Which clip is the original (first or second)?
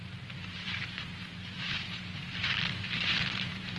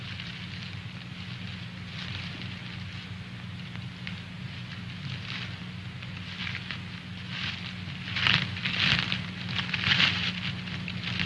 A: second